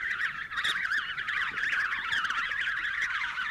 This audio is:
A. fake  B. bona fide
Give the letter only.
A